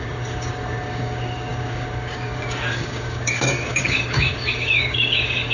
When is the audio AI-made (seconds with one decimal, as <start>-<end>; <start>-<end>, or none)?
0.0-5.5